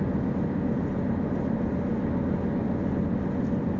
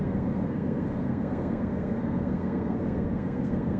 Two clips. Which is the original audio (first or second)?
first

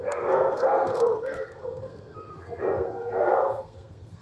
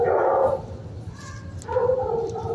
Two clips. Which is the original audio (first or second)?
second